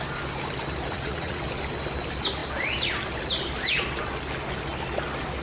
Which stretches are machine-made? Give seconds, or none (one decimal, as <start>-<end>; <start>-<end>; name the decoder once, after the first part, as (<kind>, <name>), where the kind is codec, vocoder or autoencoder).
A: 0.9-1.4 (vocoder, Vocos)